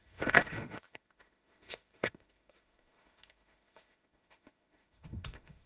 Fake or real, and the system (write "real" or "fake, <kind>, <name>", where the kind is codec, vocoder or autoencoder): fake, autoencoder, DAC-VAE